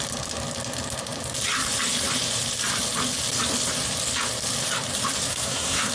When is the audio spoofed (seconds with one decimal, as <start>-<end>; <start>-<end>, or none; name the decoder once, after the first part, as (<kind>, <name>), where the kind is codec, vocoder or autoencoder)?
5.3-5.9 (codec, SNAC)